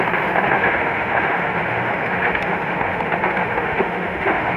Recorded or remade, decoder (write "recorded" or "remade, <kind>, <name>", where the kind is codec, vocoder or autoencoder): remade, autoencoder, DAC-VAE